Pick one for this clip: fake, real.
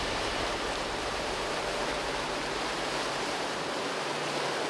fake